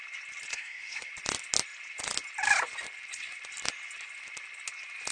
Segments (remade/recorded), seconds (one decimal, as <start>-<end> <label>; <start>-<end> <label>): 0.0-0.5 recorded; 0.5-1.1 remade; 1.1-5.1 recorded